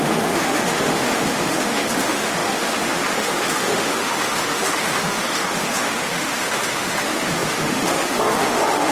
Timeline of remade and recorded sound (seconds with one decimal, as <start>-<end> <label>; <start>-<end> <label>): 0.0-8.9 remade